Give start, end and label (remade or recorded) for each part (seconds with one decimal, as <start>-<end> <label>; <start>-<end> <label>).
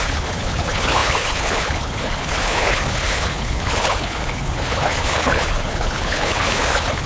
0.0-7.1 remade